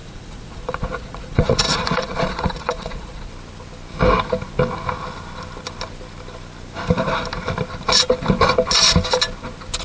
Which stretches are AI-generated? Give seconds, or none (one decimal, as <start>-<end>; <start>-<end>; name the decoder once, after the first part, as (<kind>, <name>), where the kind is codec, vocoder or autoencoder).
0.0-3.3 (vocoder, Vocos)